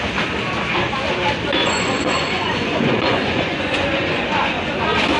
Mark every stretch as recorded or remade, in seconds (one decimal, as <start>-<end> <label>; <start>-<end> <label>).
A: 0.0-1.6 recorded; 1.6-4.7 remade; 4.7-5.2 recorded

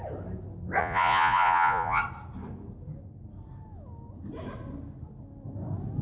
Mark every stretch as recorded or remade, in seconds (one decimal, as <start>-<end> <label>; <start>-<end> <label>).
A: 0.0-0.8 recorded; 0.8-2.0 remade; 2.0-6.0 recorded